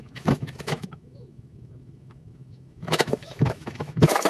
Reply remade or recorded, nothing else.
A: remade